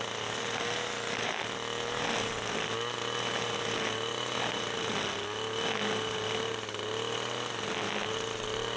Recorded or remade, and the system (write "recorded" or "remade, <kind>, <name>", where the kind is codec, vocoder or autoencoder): recorded